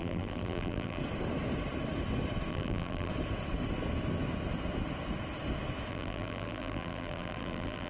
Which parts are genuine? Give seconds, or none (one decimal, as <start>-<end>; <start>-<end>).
1.0-2.5; 3.1-5.9